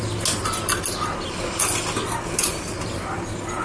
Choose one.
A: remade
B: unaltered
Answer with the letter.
B